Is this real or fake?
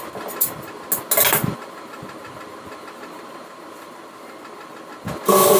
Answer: real